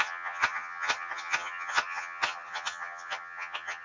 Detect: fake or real fake